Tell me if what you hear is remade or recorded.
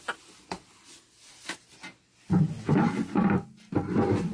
recorded